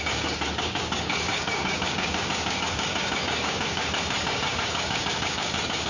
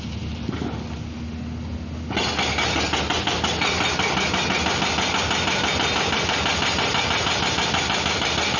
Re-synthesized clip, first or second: first